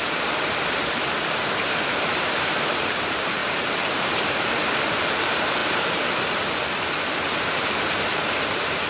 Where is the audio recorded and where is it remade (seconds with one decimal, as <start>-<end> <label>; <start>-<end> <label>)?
0.0-1.0 remade; 1.0-1.9 recorded; 1.9-8.9 remade